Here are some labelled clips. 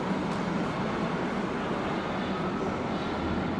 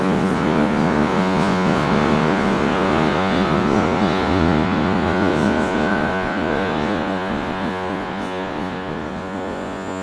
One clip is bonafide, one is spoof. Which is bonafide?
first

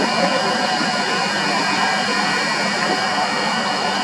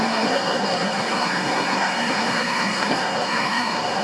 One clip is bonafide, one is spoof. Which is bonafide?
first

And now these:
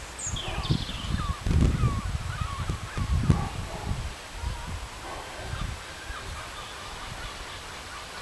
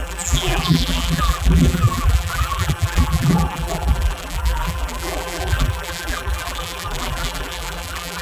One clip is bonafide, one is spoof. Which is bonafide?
first